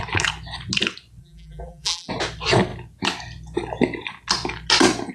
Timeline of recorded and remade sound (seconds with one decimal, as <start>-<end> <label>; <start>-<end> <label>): 0.0-1.2 recorded; 1.2-2.1 remade; 2.1-5.1 recorded